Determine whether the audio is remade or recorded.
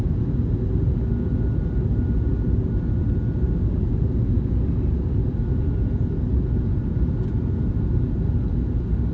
recorded